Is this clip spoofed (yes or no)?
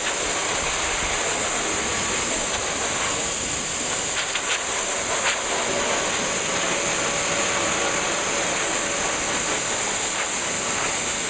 no